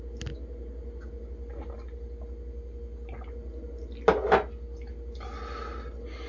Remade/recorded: recorded